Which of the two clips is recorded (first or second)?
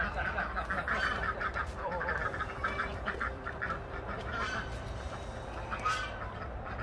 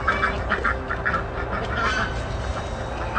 second